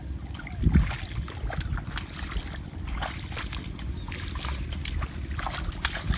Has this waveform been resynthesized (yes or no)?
no